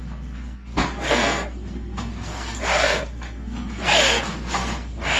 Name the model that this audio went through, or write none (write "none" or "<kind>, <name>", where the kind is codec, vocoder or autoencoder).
codec, SNAC